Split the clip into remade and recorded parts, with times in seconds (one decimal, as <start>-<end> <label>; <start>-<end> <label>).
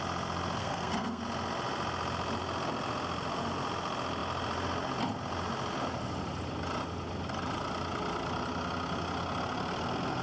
0.0-0.6 recorded; 0.6-1.2 remade; 1.2-10.2 recorded